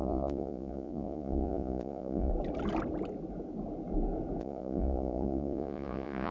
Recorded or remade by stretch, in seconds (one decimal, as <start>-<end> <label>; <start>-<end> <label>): 0.0-2.3 remade; 2.3-4.4 recorded; 4.4-6.3 remade